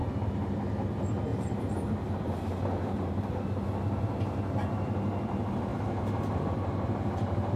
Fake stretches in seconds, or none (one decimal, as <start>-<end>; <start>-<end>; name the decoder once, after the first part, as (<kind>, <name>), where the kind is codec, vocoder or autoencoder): 0.0-0.6 (vocoder, BigVGAN v2); 1.3-3.4; 5.7-7.6